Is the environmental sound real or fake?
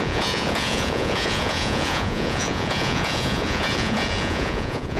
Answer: fake